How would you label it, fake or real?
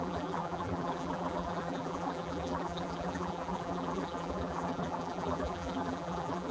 fake